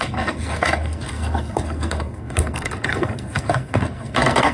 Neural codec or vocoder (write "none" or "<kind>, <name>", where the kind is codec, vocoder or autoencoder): codec, SNAC